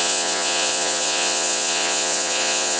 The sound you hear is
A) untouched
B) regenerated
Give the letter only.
B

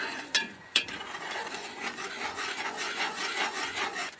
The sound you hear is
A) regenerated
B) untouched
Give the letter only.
A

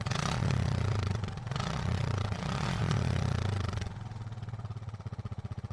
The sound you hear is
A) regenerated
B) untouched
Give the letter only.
A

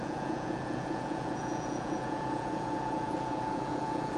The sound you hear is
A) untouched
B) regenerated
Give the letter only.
B